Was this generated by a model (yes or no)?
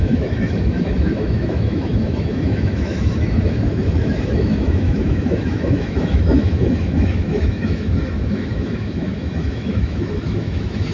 yes